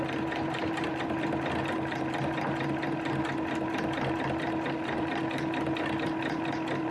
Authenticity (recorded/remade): recorded